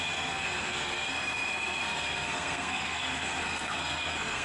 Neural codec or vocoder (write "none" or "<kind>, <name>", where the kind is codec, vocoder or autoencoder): codec, SNAC